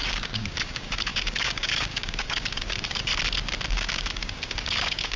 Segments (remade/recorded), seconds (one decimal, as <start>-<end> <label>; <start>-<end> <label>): 0.0-3.1 remade; 3.1-3.7 recorded; 3.7-5.2 remade